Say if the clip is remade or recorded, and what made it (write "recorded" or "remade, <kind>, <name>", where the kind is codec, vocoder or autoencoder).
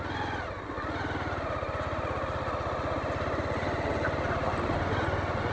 recorded